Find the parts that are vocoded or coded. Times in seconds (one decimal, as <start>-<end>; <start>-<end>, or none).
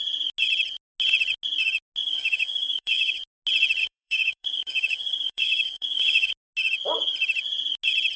2.0-3.2; 3.8-6.3